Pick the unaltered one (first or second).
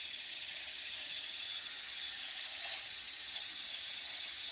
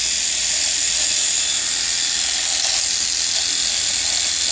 second